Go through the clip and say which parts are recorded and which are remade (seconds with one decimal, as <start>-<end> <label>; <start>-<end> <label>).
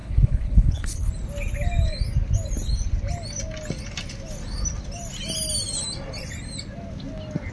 0.0-1.1 remade; 1.1-7.5 recorded